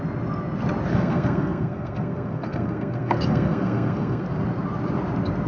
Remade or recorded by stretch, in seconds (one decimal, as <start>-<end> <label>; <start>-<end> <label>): 0.0-0.9 recorded; 0.9-4.2 remade; 4.2-5.5 recorded